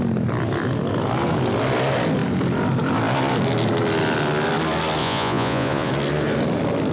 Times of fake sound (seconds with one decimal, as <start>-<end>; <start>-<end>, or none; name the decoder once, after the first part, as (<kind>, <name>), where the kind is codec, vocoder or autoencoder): 5.0-5.9 (vocoder, Vocos)